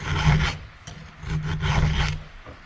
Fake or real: real